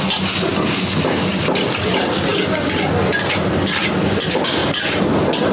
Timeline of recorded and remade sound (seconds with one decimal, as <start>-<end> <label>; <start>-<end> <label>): 0.0-5.5 recorded